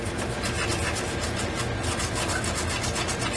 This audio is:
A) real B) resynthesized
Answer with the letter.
A